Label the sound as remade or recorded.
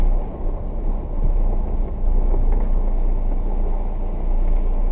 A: recorded